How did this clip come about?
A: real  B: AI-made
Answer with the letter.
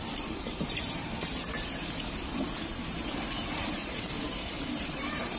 B